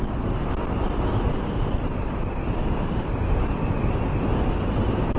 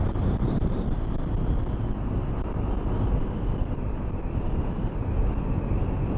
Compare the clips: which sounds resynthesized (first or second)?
first